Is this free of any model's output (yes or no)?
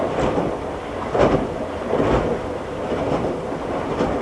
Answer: yes